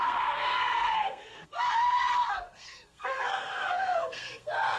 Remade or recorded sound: remade